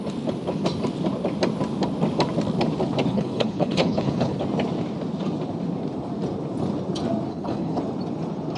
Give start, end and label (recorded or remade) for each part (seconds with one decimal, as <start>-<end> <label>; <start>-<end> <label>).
0.0-3.1 recorded; 3.1-4.4 remade; 4.4-7.3 recorded; 7.3-7.8 remade; 7.8-8.6 recorded